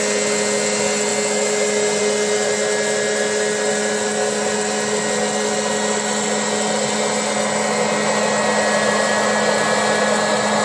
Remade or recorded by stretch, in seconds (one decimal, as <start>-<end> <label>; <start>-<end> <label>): 0.0-10.6 recorded